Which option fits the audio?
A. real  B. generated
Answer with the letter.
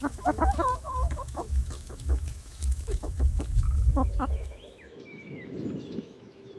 B